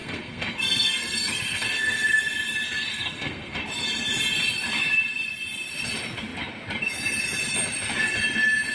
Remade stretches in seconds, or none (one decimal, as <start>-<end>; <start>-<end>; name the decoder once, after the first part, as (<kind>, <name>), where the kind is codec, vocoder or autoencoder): 0.0-2.2 (codec, SNAC); 2.9-3.6